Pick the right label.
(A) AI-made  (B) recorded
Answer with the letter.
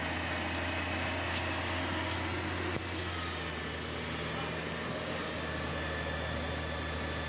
B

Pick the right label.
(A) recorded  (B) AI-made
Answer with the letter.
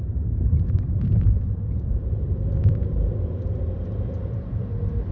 B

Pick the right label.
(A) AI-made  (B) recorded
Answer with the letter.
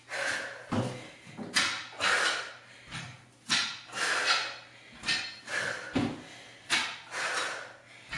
B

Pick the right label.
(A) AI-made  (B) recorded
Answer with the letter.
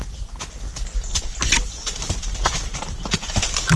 B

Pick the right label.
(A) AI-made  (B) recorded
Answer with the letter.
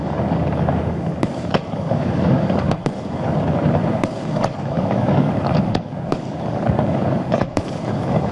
A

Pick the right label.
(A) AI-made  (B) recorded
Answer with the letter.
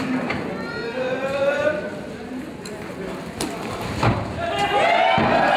B